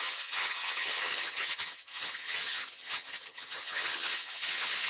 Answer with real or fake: fake